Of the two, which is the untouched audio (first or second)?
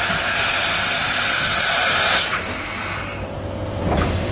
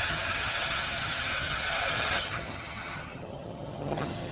first